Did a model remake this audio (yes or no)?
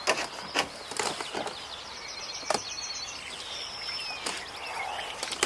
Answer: no